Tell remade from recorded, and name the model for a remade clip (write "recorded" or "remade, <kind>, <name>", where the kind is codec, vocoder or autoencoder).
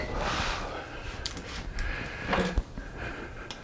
recorded